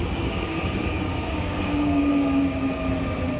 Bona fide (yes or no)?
no